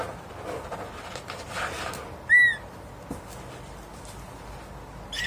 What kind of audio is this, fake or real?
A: real